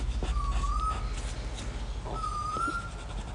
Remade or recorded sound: recorded